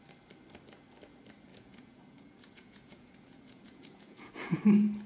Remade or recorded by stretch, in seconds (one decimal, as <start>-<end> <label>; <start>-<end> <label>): 0.0-1.5 recorded; 1.5-4.6 remade; 4.6-5.1 recorded